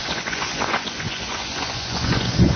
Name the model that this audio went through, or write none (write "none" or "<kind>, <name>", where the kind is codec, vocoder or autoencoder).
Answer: vocoder, Vocos